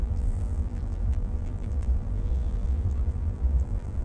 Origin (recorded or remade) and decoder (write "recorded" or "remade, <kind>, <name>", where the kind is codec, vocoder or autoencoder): remade, vocoder, BigVGAN v2